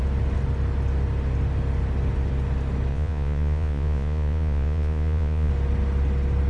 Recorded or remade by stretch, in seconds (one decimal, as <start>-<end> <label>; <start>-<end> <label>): 0.0-2.9 recorded; 2.9-5.5 remade; 5.5-6.5 recorded